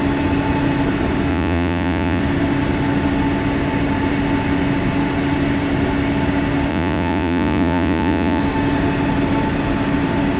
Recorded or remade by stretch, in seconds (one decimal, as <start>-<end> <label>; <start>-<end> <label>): 0.0-1.3 recorded; 1.3-2.2 remade; 2.2-6.7 recorded; 6.7-8.4 remade; 8.4-10.4 recorded